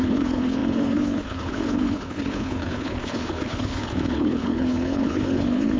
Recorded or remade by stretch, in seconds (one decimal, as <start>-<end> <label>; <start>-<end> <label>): 0.0-5.8 remade